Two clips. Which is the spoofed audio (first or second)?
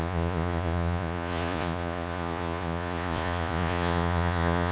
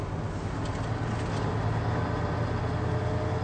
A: first